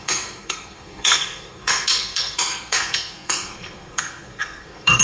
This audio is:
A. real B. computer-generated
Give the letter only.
B